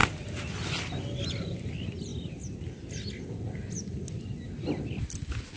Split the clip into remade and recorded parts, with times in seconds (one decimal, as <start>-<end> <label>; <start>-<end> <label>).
0.0-5.6 recorded